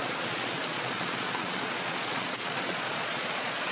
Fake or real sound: fake